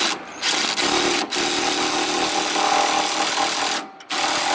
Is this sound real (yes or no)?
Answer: yes